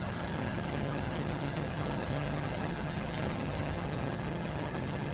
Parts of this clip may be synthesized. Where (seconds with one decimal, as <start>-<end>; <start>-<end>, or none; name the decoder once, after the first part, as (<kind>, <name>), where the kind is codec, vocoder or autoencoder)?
0.0-5.1 (vocoder, HiFi-GAN)